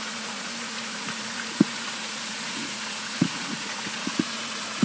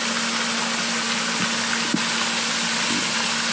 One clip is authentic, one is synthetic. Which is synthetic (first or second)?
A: first